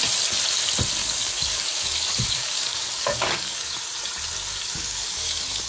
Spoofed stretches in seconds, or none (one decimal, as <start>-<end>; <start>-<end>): 1.0-3.8; 4.5-5.7